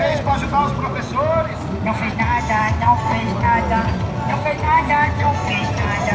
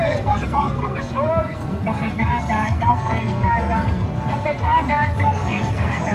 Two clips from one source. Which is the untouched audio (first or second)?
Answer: first